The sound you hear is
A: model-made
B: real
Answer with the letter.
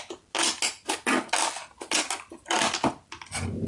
B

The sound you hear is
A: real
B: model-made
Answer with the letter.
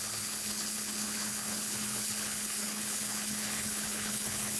B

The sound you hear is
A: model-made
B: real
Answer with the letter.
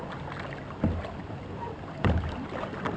B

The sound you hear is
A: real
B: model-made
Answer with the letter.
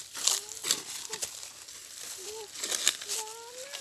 A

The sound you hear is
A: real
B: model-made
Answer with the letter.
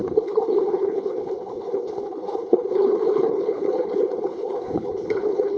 B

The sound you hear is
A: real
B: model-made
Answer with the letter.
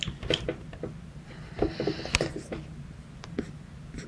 A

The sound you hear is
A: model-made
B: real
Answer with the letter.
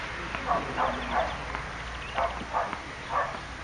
B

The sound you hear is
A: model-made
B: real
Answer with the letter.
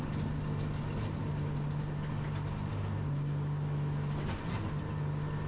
B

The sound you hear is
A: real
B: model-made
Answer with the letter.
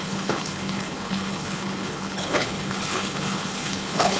B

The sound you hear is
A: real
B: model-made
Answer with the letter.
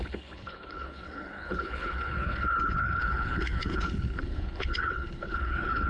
B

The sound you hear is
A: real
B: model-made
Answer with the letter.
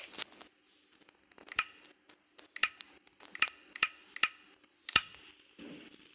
A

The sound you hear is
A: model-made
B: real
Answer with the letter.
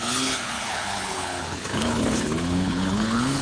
A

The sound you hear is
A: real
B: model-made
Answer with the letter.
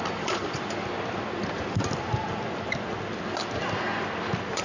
A